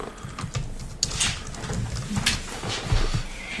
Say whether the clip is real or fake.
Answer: real